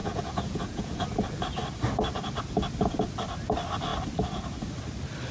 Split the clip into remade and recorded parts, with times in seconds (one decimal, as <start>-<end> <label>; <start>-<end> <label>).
0.0-1.0 remade; 1.0-5.3 recorded